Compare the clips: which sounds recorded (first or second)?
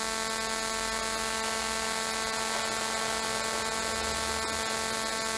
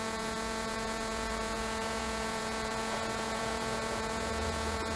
first